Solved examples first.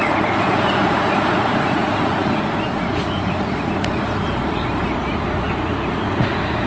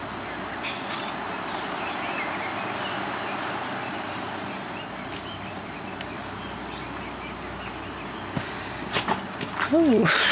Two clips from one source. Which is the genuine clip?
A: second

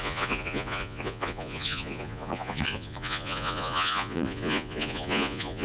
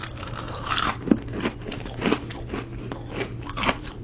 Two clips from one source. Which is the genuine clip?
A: second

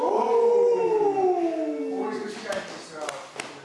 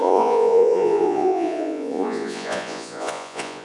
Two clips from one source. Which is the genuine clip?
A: first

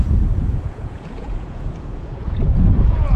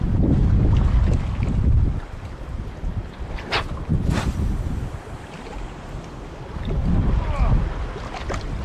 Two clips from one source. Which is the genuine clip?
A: second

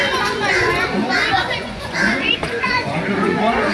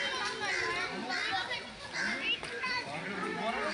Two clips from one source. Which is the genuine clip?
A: second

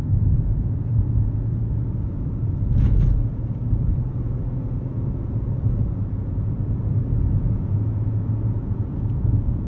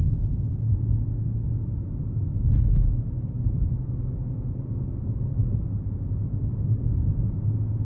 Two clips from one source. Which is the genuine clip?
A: second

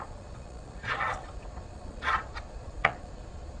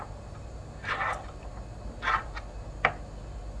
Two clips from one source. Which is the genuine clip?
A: second